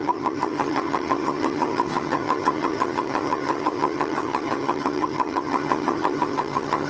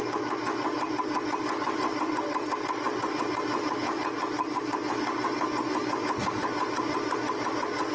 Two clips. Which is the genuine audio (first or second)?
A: second